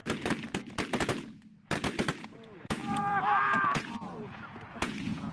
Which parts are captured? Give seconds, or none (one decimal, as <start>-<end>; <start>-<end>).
0.0-2.2